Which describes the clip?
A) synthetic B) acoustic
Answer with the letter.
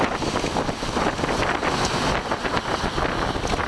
B